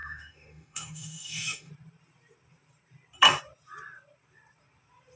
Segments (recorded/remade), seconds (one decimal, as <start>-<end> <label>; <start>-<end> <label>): 0.0-1.7 remade; 1.7-5.2 recorded